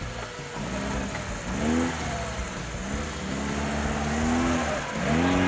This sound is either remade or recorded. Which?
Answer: recorded